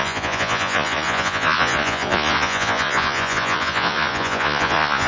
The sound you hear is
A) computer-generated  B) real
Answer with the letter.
A